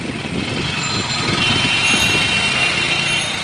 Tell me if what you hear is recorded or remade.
recorded